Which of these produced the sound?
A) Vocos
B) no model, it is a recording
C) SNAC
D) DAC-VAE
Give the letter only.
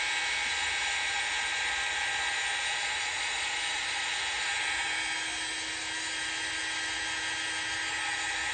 B